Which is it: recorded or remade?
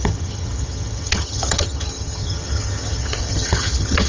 remade